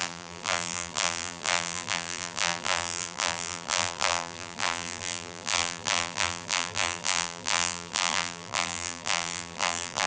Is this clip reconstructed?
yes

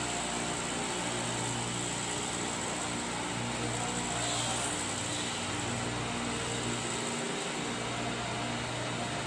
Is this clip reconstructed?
no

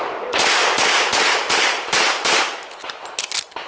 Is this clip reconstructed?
no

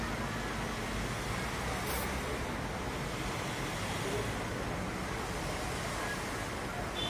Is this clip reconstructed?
no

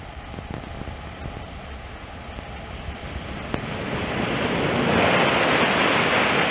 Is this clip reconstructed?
no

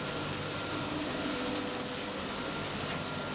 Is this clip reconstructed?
no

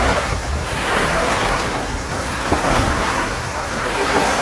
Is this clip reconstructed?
yes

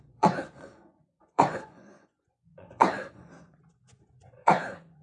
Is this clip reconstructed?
yes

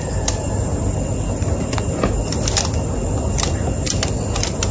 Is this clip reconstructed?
no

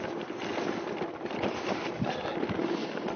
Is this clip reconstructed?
no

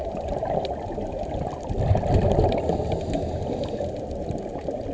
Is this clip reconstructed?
no